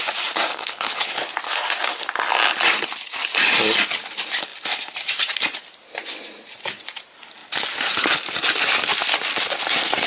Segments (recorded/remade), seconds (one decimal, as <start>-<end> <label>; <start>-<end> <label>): 0.0-0.5 recorded; 0.5-1.1 remade; 1.1-10.1 recorded

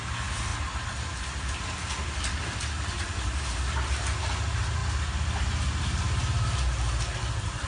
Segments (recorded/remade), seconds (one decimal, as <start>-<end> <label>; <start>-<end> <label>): 0.0-7.7 recorded

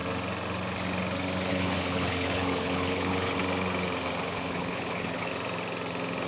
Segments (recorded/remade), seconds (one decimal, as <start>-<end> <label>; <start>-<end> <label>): 0.0-1.5 recorded; 1.5-3.4 remade; 3.4-4.2 recorded; 4.2-5.3 remade; 5.3-6.3 recorded

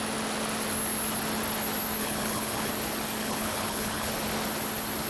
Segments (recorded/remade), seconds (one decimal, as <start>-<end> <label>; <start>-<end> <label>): 0.0-2.0 recorded; 2.0-2.7 remade; 2.7-3.2 recorded; 3.2-4.1 remade; 4.1-5.1 recorded

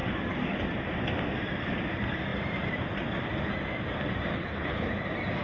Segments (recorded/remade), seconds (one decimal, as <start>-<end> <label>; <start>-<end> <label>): 0.0-4.3 recorded; 4.3-4.9 remade; 4.9-5.4 recorded

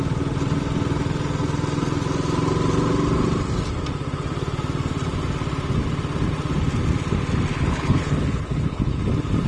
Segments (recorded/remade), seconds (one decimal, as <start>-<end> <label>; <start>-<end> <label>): 0.0-7.5 recorded; 7.5-9.0 remade; 9.0-9.5 recorded

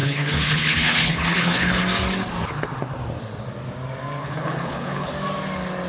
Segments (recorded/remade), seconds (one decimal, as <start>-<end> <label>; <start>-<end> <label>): 0.0-1.8 remade; 1.8-4.2 recorded; 4.2-5.1 remade; 5.1-5.9 recorded

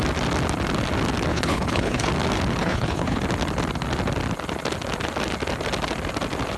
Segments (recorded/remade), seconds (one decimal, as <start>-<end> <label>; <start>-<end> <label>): 0.0-1.3 recorded; 1.3-2.1 remade; 2.1-2.6 recorded; 2.6-3.2 remade; 3.2-6.6 recorded